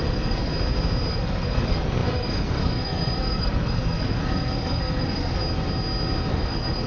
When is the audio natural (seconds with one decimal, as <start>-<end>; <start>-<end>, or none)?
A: 0.5-1.1; 5.4-6.3